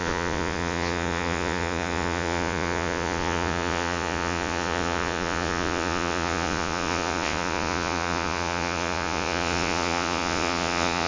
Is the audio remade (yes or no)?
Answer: yes